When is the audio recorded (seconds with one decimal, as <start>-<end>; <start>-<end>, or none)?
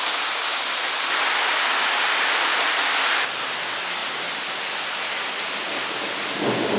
0.0-6.8